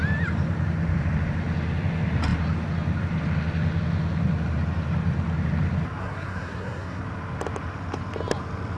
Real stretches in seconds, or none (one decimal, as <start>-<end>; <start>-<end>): 0.0-6.0; 7.0-8.8